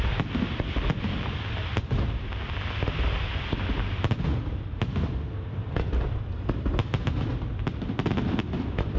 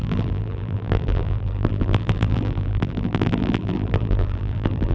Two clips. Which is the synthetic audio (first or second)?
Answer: second